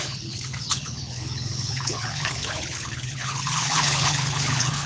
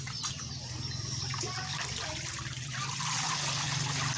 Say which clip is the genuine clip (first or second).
second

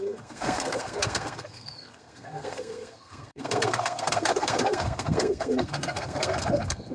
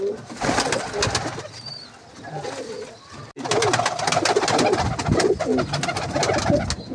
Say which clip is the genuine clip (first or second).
second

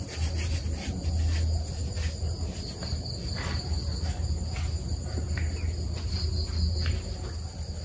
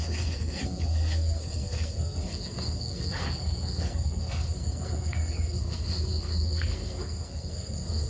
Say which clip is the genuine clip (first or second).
first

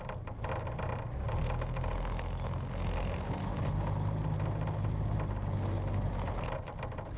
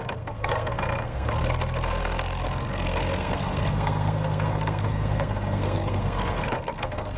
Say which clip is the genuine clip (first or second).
first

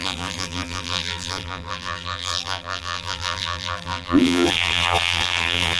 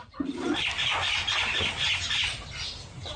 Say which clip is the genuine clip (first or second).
second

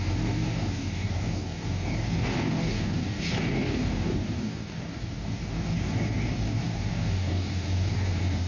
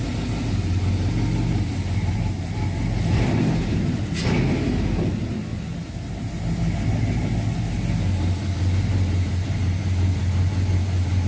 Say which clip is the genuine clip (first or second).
second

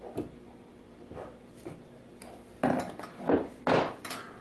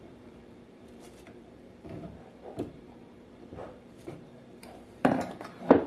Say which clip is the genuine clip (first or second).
first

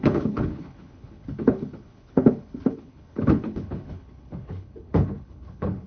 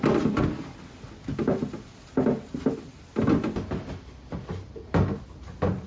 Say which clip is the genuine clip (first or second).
second